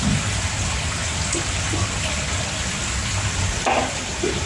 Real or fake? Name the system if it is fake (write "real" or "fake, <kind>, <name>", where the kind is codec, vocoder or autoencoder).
real